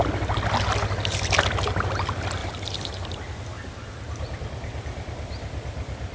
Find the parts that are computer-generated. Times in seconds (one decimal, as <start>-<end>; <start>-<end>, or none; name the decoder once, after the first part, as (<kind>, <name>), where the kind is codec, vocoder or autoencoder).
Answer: 2.4-3.0 (vocoder, BigVGAN v2)